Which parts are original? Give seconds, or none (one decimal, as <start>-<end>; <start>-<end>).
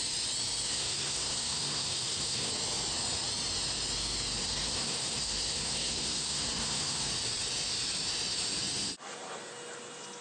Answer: 0.0-0.7; 2.5-4.4; 7.1-10.2